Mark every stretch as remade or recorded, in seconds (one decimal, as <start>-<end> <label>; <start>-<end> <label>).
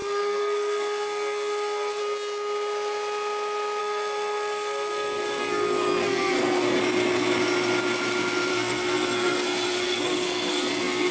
0.0-2.0 remade; 2.0-3.8 recorded; 3.8-6.8 remade; 6.8-8.5 recorded; 8.5-11.1 remade